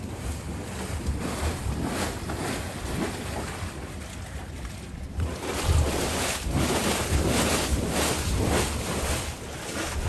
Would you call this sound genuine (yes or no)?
yes